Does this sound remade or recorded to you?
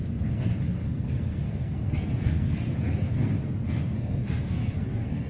remade